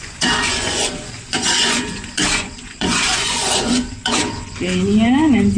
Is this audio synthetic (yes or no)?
yes